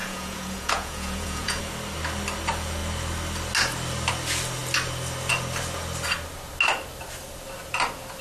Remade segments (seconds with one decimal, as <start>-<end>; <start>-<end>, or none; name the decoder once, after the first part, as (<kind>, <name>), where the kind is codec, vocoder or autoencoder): 0.0-1.6 (vocoder, Vocos)